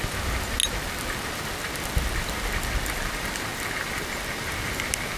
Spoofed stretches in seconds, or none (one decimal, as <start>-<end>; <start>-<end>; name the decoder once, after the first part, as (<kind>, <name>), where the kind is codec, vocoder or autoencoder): none